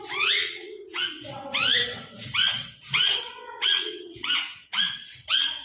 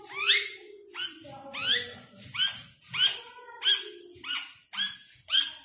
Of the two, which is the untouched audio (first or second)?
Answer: second